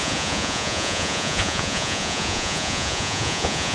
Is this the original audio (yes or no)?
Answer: no